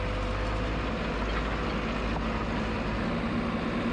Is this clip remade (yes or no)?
no